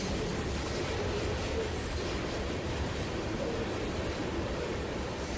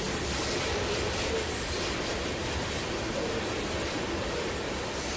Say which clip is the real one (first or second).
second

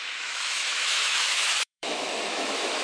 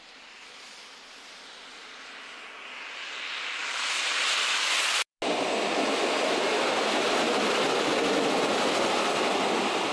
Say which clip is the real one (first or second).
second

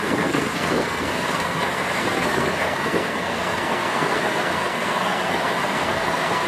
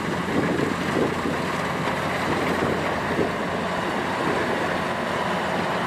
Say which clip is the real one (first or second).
second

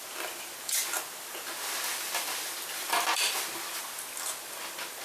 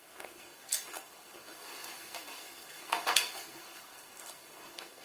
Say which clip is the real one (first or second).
first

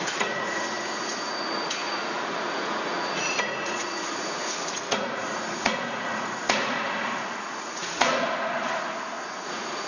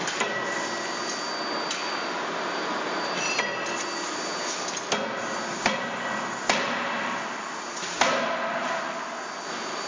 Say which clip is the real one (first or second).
second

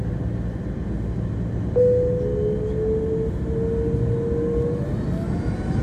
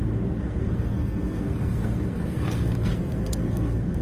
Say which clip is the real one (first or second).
first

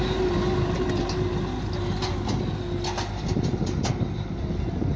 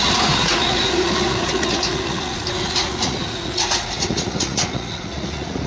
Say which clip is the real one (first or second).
first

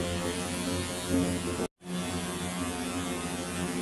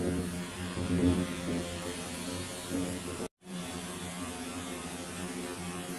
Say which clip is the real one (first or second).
first